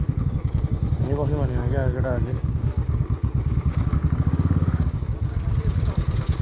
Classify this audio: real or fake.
fake